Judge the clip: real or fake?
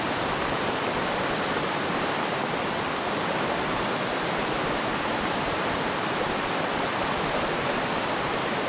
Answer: fake